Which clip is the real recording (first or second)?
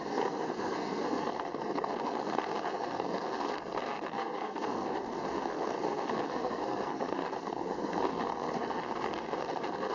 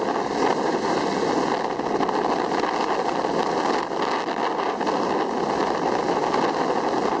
second